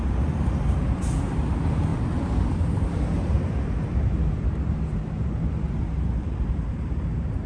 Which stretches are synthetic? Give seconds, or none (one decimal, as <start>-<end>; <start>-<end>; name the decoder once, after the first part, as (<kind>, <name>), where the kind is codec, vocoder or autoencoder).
0.0-1.9 (vocoder, BigVGAN v2); 3.3-7.5